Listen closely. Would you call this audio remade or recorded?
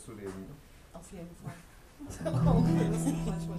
recorded